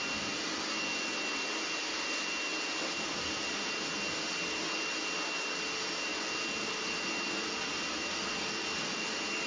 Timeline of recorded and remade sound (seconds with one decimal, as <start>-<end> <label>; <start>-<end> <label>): 0.0-9.5 recorded